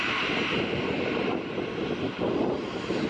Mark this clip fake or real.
real